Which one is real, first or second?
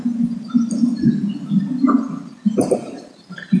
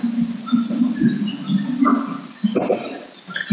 second